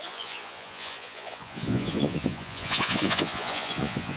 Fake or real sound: fake